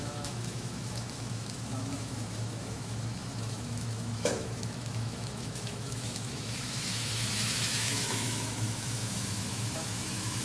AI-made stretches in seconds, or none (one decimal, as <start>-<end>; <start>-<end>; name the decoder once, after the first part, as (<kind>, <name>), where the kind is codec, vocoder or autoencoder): 0.0-10.4 (autoencoder, DAC-VAE)